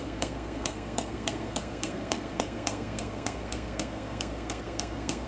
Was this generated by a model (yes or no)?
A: yes